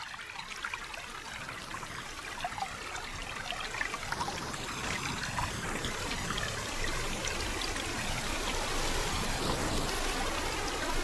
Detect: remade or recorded recorded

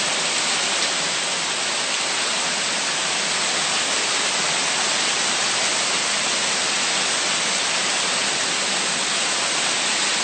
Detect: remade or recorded recorded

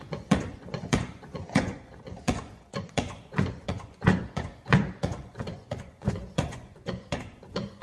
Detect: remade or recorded remade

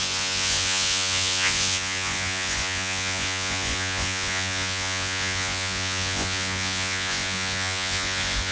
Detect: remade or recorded remade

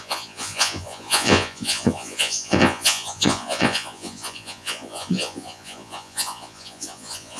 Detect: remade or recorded remade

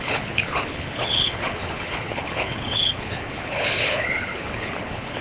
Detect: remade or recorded remade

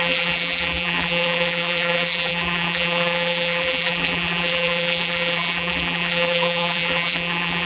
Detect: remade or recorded remade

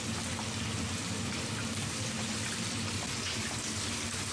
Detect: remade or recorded recorded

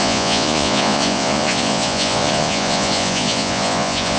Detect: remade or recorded remade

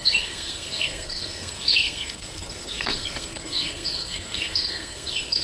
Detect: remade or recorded remade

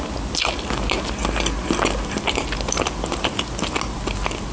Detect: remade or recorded recorded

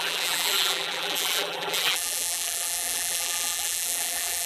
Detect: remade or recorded remade